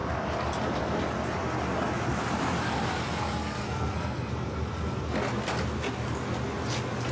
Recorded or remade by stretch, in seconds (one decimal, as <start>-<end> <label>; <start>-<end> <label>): 0.0-3.4 recorded; 3.4-4.3 remade; 4.3-7.1 recorded